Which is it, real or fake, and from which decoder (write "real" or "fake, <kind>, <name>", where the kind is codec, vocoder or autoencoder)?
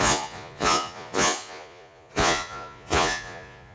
fake, vocoder, Vocos